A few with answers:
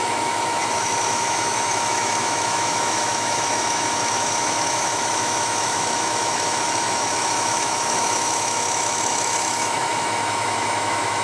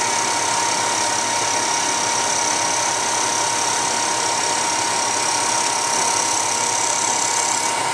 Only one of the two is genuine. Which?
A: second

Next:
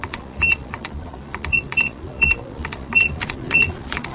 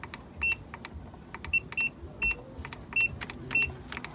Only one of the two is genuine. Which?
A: second